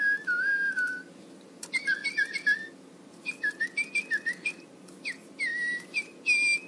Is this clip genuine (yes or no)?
yes